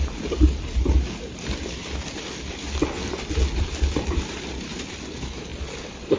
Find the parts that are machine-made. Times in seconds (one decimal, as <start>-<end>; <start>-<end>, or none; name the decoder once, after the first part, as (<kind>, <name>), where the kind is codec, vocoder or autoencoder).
none

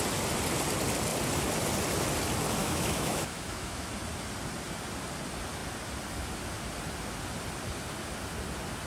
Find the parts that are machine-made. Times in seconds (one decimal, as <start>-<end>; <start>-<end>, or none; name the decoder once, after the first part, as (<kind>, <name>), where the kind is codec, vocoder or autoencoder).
2.6-3.9 (autoencoder, DAC-VAE)

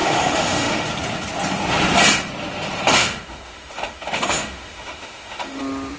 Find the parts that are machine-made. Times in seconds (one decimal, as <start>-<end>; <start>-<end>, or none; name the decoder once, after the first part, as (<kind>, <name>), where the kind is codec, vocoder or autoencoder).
0.0-0.9 (autoencoder, DAC-VAE); 3.0-5.6

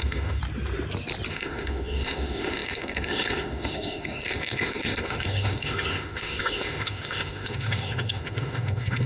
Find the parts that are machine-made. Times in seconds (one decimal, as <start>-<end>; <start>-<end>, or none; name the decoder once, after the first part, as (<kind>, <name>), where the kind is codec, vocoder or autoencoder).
0.0-0.4 (autoencoder, DAC-VAE); 1.3-9.1

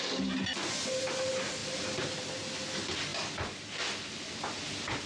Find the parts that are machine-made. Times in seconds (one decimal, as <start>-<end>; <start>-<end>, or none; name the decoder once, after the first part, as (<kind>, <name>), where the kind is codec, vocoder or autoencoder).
none

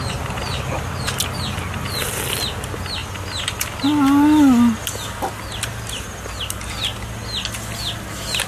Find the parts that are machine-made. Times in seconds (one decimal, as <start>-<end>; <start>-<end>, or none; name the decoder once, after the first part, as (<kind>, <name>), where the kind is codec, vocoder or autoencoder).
none

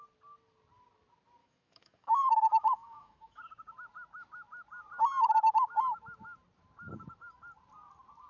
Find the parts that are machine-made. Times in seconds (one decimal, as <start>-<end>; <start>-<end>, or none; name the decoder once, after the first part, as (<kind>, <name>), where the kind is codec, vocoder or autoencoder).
1.4-3.4 (autoencoder, DAC-VAE)

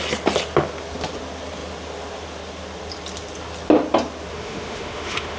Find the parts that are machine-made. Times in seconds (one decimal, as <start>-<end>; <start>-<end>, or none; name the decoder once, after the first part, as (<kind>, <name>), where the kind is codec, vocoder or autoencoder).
4.3-5.4 (autoencoder, DAC-VAE)